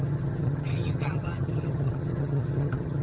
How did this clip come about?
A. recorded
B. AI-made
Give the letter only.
B